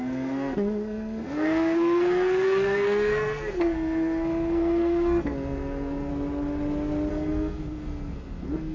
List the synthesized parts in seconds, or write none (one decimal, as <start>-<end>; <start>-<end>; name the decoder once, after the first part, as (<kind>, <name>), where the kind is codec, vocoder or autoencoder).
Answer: 0.0-6.1 (codec, SNAC); 7.1-8.7